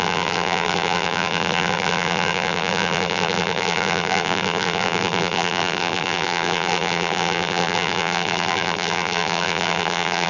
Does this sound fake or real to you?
fake